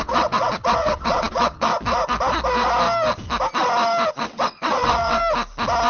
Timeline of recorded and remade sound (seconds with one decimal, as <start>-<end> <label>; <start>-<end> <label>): 0.0-1.7 remade; 1.7-4.1 recorded; 4.1-5.2 remade; 5.2-5.9 recorded